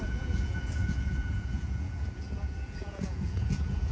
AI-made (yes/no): yes